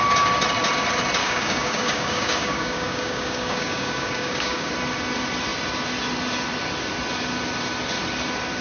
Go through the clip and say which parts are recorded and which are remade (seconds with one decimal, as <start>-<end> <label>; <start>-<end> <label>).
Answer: 0.0-1.2 recorded; 1.2-4.7 remade; 4.7-8.6 recorded